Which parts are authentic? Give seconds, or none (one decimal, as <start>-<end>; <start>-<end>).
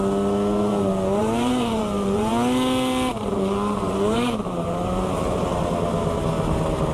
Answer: 0.0-1.2; 2.3-3.1; 5.6-6.9